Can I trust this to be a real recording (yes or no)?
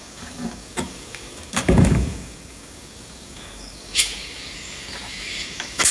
no